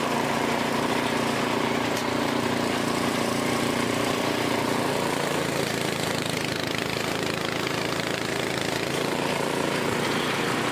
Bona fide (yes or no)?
no